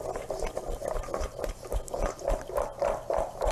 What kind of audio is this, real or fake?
real